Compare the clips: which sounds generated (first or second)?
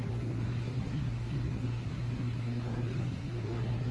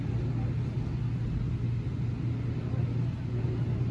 first